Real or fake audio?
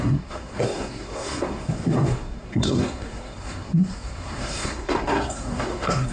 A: fake